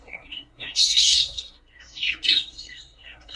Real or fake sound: fake